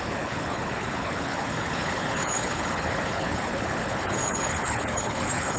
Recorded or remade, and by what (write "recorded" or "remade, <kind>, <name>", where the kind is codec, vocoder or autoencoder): remade, codec, HILCodec